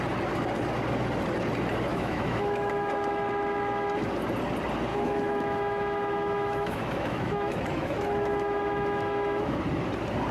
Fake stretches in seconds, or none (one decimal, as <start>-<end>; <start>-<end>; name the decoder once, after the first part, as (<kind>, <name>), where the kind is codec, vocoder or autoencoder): 1.9-2.9 (autoencoder, DAC-VAE); 4.9-9.6